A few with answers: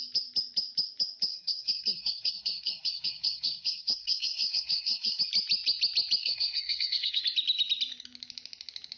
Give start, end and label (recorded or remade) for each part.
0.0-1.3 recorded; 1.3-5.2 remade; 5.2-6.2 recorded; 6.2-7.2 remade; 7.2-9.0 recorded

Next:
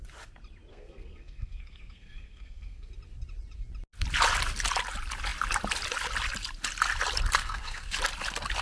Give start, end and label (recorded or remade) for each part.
0.0-0.7 recorded; 0.7-2.9 remade; 2.9-7.4 recorded; 7.4-8.0 remade; 8.0-8.6 recorded

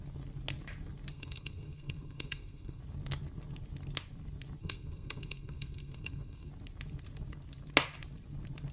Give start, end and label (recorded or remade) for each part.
0.0-1.1 recorded; 1.1-2.8 remade; 2.8-4.6 recorded; 4.6-6.5 remade; 6.5-8.7 recorded

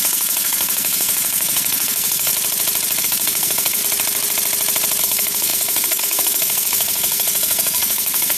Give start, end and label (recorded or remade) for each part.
0.0-2.3 remade; 2.3-3.0 recorded; 3.0-3.8 remade; 3.8-5.0 recorded; 5.0-8.4 remade

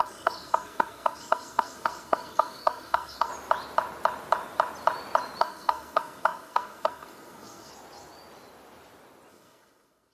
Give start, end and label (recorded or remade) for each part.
0.0-3.3 remade; 3.3-5.4 recorded; 5.4-7.7 remade; 7.7-9.3 recorded; 9.3-10.1 remade

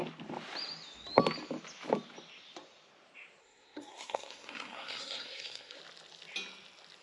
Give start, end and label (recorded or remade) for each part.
0.0-3.4 recorded; 3.4-5.8 remade; 5.8-7.0 recorded

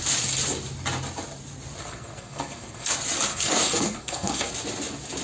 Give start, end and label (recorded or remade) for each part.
0.0-1.8 recorded; 1.8-2.9 remade; 2.9-3.3 recorded; 3.3-4.5 remade; 4.5-5.2 recorded

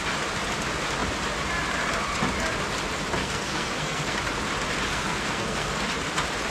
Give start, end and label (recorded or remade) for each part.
0.0-3.2 recorded; 3.2-4.2 remade; 4.2-4.9 recorded; 4.9-5.8 remade; 5.8-6.5 recorded